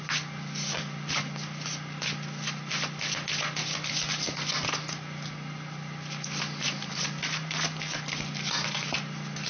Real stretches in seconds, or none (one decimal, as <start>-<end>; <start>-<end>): 0.0-9.5